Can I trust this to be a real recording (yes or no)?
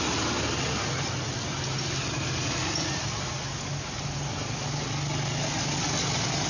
yes